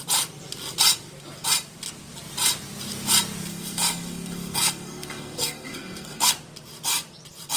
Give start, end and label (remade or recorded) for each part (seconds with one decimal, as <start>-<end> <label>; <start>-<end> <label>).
0.0-3.5 recorded; 3.5-6.3 remade; 6.3-7.6 recorded